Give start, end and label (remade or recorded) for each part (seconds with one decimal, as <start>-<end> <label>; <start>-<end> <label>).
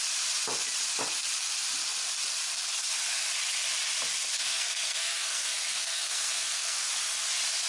0.0-4.4 recorded; 4.4-6.9 remade; 6.9-7.7 recorded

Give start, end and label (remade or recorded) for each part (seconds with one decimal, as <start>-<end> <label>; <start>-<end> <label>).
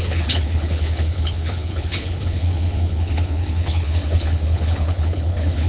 0.0-5.7 remade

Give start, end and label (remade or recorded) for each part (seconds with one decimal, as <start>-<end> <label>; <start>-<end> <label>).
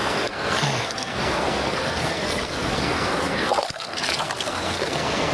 0.0-5.3 remade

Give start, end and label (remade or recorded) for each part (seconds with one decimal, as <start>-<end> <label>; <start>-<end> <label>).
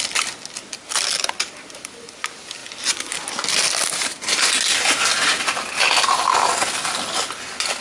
0.0-7.8 recorded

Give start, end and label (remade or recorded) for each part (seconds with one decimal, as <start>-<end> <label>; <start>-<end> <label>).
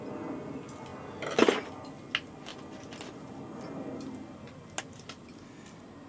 0.0-6.1 recorded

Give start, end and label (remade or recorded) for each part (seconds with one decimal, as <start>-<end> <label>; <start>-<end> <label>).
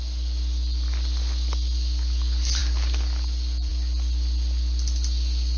0.0-5.6 recorded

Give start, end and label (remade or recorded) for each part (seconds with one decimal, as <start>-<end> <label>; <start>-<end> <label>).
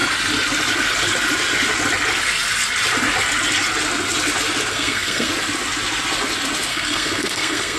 0.0-4.7 recorded; 4.7-5.3 remade; 5.3-6.7 recorded; 6.7-7.8 remade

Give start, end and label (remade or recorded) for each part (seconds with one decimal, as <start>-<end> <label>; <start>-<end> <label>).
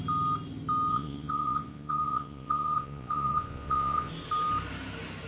0.0-0.9 recorded; 0.9-4.1 remade; 4.1-5.3 recorded